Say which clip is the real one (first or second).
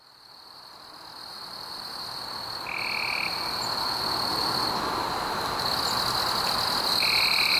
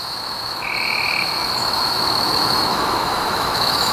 first